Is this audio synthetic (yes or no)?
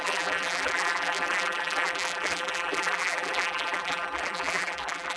yes